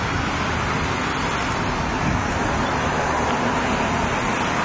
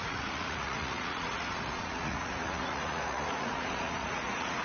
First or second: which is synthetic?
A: second